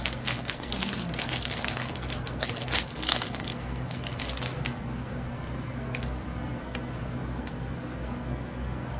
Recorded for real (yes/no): no